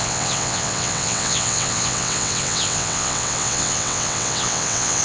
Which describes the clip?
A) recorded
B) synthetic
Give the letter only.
B